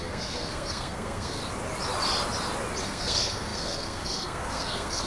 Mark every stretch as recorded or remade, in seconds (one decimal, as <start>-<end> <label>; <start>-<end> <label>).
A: 0.0-1.4 remade; 1.4-2.8 recorded; 2.8-5.1 remade

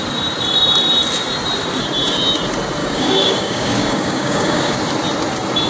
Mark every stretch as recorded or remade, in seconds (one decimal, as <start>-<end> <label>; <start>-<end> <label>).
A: 0.0-2.8 recorded; 2.8-4.8 remade; 4.8-5.7 recorded

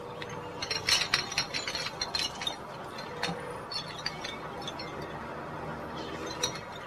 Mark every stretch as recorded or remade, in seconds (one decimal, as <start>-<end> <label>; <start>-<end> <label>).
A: 0.0-6.9 recorded